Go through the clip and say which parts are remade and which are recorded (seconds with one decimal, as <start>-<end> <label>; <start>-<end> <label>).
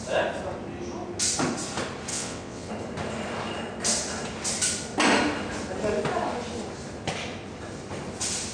0.0-2.1 recorded; 2.1-2.7 remade; 2.7-8.5 recorded